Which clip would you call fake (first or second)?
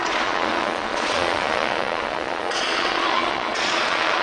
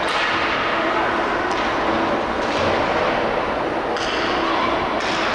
first